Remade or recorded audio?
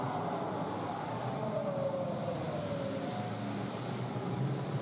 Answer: recorded